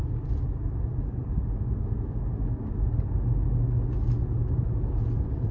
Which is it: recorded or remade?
recorded